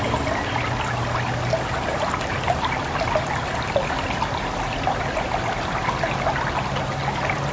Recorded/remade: recorded